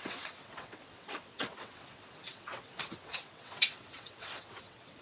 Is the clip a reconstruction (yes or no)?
yes